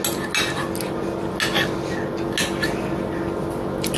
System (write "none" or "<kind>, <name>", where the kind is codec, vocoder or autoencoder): none